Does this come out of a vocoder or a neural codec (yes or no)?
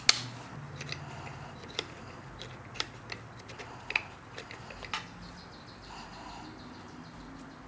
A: no